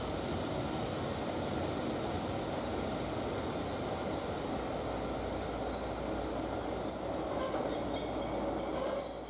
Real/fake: real